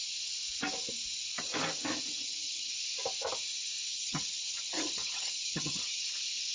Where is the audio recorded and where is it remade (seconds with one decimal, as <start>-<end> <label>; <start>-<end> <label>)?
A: 0.0-2.2 recorded; 2.2-2.7 remade; 2.7-3.9 recorded; 3.9-6.0 remade; 6.0-6.5 recorded